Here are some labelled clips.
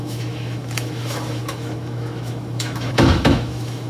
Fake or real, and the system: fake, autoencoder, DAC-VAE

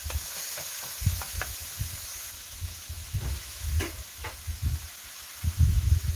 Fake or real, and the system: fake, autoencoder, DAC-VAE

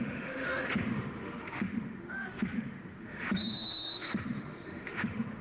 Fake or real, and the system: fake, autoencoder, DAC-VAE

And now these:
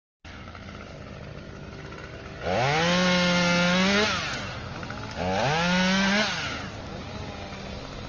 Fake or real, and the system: real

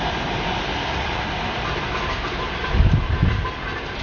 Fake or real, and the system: real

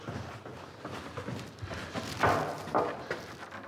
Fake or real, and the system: real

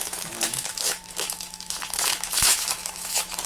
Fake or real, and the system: fake, autoencoder, DAC-VAE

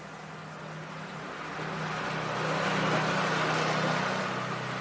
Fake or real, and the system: real